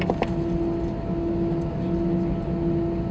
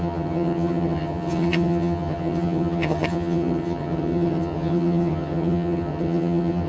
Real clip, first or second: first